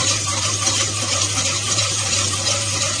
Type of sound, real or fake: fake